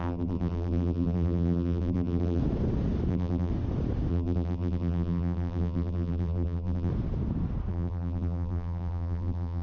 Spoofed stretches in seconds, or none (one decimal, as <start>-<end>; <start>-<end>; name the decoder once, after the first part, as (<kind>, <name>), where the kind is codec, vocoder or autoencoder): 0.0-2.4 (vocoder, BigVGAN v2); 3.1-3.5; 4.1-6.9; 7.7-9.6